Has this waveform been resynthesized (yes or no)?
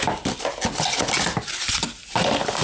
no